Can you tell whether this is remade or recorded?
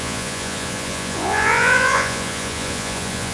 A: remade